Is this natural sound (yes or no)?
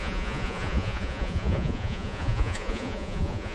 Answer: no